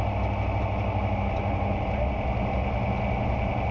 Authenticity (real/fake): real